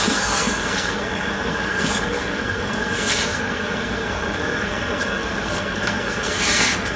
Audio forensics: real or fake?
fake